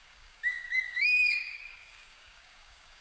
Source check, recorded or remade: remade